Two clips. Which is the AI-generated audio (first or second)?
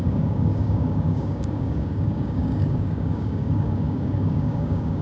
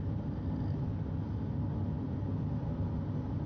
first